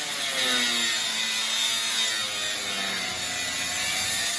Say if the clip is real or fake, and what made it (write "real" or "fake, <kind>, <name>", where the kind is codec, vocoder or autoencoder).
real